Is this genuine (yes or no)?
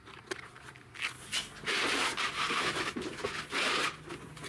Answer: yes